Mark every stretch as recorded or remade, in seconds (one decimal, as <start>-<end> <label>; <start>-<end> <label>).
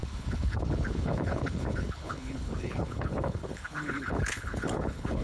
0.0-5.2 remade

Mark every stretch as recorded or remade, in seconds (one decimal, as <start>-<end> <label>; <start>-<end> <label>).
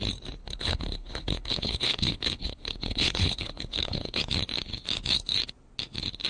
0.0-0.4 recorded; 0.4-4.2 remade; 4.2-6.3 recorded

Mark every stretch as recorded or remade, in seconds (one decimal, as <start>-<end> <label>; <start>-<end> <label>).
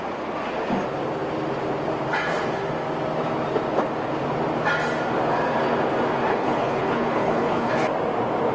0.0-6.3 recorded; 6.3-7.7 remade; 7.7-8.5 recorded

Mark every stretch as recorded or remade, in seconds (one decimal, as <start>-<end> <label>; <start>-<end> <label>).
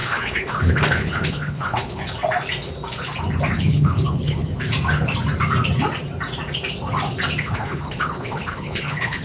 0.0-2.0 remade; 2.0-3.6 recorded; 3.6-4.5 remade; 4.5-7.4 recorded; 7.4-9.2 remade